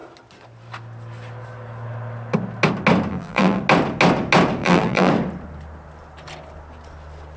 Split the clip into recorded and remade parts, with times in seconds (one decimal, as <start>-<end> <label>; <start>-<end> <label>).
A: 0.0-3.1 recorded; 3.1-3.6 remade; 3.6-4.6 recorded; 4.6-5.1 remade; 5.1-7.4 recorded